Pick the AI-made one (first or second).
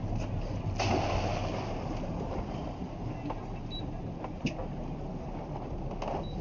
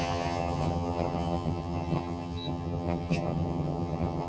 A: second